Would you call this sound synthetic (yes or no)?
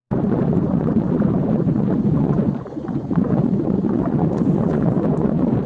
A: yes